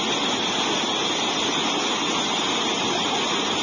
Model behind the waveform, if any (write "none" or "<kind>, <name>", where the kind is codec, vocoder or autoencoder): none